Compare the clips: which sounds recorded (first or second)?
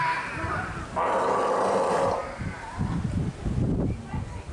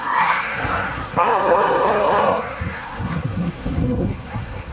first